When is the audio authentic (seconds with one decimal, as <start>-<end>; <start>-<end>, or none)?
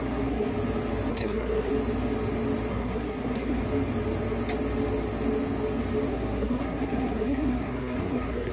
0.5-1.1; 1.7-2.7; 3.6-6.1